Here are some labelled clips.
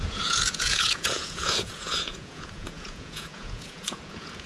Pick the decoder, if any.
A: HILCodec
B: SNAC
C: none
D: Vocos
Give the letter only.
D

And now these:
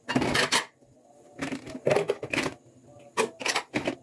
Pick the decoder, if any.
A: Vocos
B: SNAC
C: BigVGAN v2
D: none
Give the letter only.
D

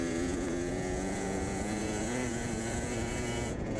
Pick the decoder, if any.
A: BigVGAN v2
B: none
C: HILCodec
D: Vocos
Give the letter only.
D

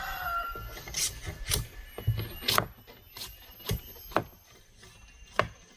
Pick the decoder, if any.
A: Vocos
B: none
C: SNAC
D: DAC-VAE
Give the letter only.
B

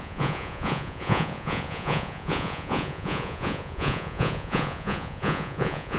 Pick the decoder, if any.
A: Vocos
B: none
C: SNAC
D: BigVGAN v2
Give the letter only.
A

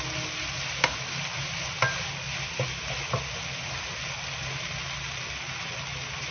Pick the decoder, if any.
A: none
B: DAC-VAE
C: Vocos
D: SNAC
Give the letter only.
A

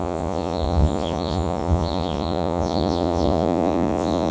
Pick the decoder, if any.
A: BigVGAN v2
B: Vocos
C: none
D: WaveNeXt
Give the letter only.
B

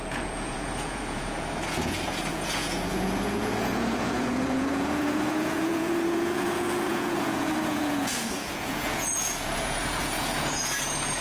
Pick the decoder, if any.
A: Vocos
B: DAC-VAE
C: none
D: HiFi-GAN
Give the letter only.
A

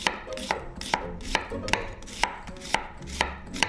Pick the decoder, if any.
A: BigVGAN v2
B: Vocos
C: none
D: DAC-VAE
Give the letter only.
C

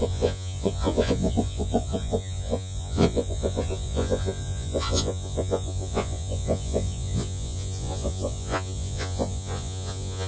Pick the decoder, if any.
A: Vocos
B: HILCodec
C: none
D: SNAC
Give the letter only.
A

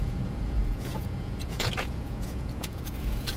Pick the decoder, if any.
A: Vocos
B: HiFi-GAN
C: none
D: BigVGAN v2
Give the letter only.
A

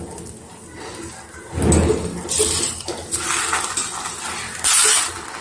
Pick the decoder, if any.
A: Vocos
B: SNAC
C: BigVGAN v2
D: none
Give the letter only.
D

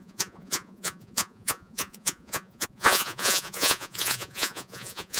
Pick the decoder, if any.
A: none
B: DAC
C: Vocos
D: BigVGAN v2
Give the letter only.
C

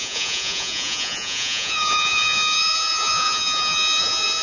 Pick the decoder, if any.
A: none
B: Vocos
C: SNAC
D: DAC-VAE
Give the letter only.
B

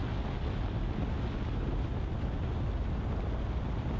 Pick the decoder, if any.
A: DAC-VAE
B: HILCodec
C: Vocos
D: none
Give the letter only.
D